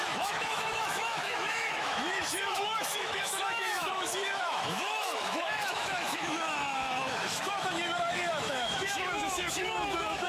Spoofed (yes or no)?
yes